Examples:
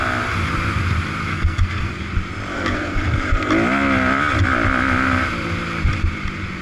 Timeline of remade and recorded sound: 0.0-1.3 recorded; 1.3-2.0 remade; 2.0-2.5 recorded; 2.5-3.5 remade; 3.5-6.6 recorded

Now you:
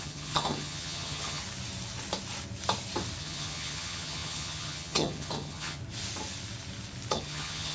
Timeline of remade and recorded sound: 0.0-1.4 remade; 1.4-3.2 recorded; 3.2-5.8 remade; 5.8-7.1 recorded; 7.1-7.7 remade

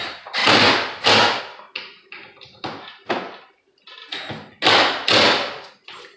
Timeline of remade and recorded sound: 0.0-6.2 recorded

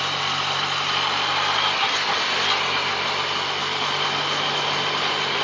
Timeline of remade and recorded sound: 0.0-5.4 recorded

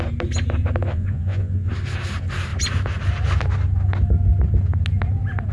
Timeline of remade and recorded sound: 0.0-0.9 recorded; 0.9-1.7 remade; 1.7-5.5 recorded

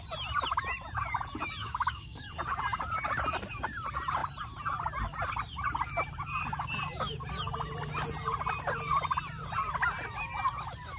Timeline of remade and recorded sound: 0.0-1.6 recorded; 1.6-2.3 remade; 2.3-11.0 recorded

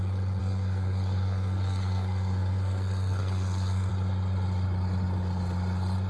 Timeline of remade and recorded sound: 0.0-0.4 recorded; 0.4-3.9 remade; 3.9-6.1 recorded

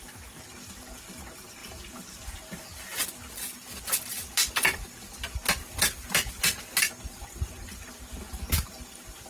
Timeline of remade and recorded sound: 0.0-9.3 recorded